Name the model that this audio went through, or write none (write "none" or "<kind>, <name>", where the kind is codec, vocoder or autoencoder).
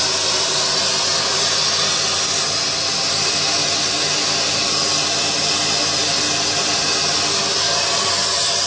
none